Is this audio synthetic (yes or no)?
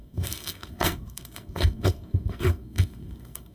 yes